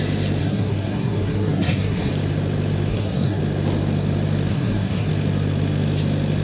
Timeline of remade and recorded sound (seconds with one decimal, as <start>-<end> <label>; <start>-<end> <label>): 0.0-0.4 recorded; 0.4-2.1 remade; 2.1-2.9 recorded; 2.9-3.4 remade; 3.4-4.5 recorded; 4.5-5.1 remade; 5.1-6.4 recorded